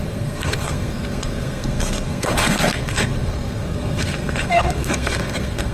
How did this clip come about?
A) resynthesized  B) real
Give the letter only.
A